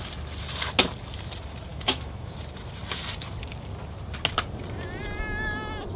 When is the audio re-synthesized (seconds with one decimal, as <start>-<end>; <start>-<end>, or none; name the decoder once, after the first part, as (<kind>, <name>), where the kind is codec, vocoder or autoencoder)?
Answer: 1.7-2.3 (autoencoder, DAC-VAE)